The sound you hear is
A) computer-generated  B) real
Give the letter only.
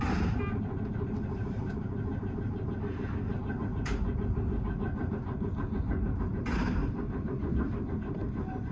B